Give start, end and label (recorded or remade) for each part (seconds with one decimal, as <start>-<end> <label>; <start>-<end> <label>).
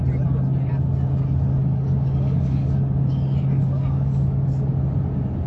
0.0-1.6 recorded; 1.6-4.7 remade; 4.7-5.5 recorded